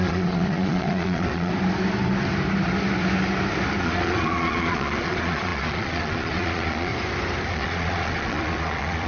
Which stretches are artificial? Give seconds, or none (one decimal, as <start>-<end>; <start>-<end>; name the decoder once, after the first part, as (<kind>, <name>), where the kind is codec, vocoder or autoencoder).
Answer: 0.0-1.5 (vocoder, Vocos); 3.8-6.9; 7.5-9.1